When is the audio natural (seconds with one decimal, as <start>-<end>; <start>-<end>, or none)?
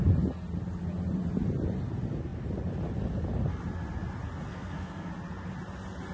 0.0-4.5; 5.1-6.1